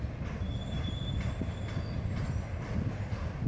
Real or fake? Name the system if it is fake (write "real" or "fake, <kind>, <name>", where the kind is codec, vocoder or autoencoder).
real